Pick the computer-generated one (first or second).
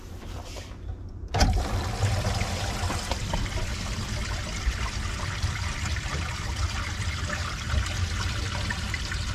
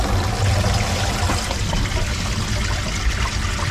first